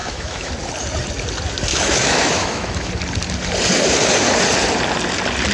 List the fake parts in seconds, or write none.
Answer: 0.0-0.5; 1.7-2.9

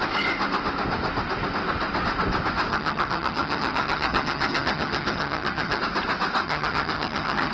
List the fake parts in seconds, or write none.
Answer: 2.7-5.8; 6.4-7.5

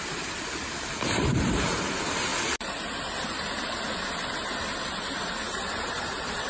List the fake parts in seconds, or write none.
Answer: 0.0-2.3; 5.2-6.5

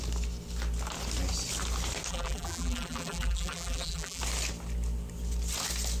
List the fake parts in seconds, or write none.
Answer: 2.1-4.2

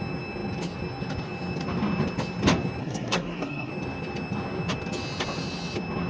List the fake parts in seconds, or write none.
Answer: 2.8-3.7

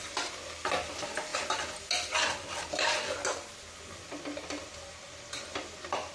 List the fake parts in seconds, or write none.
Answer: none